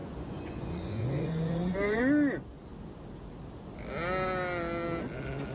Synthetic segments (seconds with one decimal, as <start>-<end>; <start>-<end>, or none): 0.0-2.0